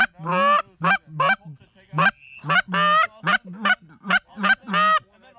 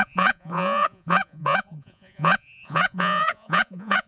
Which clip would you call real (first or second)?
first